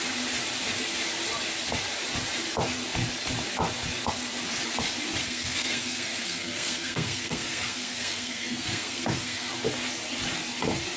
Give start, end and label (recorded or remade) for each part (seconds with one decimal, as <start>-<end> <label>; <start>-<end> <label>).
0.0-5.2 recorded; 5.2-9.5 remade; 9.5-11.0 recorded